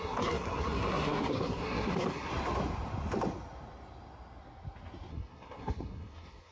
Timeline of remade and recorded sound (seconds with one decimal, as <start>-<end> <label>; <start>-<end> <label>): 0.0-2.3 remade; 2.3-5.1 recorded; 5.1-6.5 remade